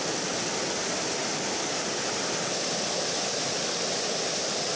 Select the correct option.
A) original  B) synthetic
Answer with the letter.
A